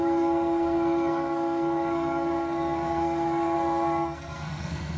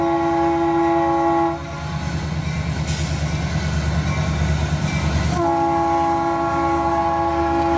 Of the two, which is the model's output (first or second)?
first